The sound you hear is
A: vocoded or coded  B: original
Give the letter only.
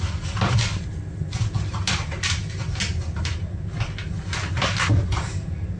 B